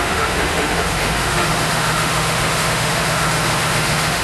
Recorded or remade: remade